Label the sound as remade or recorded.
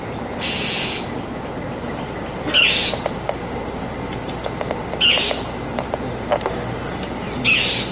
recorded